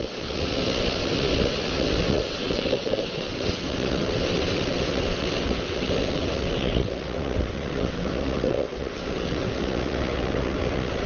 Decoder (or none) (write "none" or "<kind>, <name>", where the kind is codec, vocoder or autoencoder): vocoder, WaveNeXt